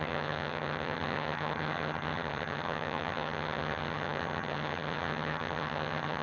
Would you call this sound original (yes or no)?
no